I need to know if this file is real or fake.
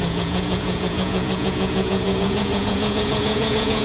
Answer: fake